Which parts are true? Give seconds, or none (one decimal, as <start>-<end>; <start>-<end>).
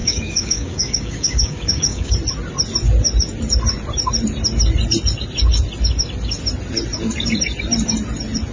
2.1-8.5